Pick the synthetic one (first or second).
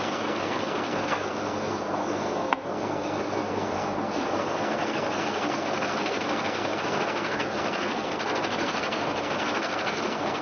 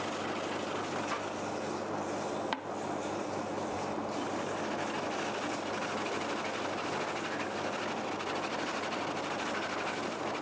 first